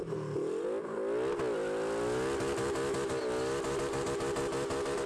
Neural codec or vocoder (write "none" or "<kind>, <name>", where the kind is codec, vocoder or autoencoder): none